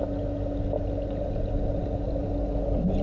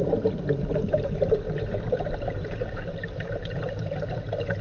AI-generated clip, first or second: second